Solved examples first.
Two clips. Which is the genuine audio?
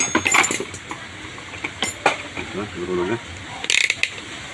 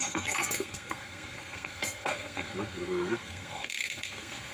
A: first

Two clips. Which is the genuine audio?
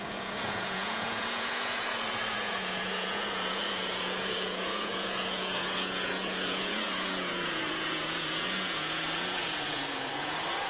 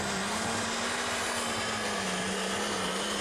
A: second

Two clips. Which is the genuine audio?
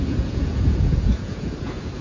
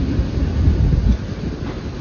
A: second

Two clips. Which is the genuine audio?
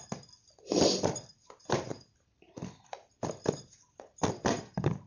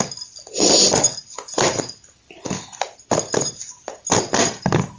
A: second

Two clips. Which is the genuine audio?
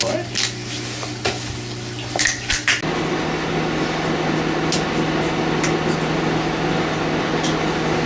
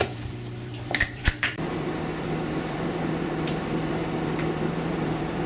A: first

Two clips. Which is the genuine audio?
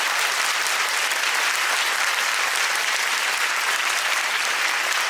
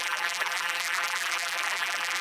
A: first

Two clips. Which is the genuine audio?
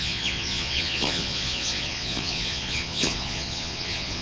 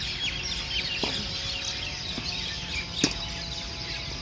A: second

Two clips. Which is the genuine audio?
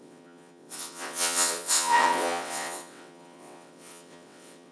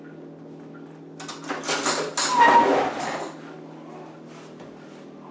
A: second